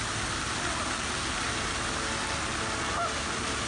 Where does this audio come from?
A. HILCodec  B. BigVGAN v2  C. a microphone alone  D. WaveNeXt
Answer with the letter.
C